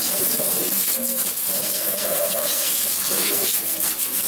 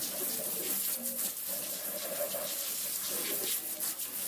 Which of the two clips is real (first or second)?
second